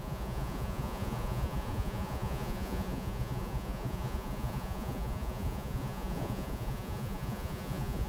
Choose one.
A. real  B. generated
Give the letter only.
B